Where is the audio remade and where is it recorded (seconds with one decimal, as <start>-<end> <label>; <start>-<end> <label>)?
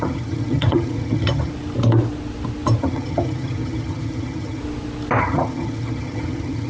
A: 0.0-1.5 remade; 1.5-2.8 recorded; 2.8-4.6 remade; 4.6-5.2 recorded; 5.2-6.7 remade